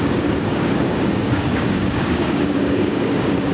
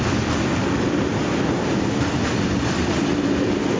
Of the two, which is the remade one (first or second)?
first